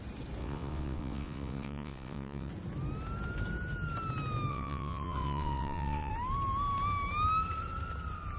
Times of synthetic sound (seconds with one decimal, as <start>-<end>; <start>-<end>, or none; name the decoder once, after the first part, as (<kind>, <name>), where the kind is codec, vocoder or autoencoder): 0.4-2.5 (vocoder, WaveNeXt); 4.5-6.1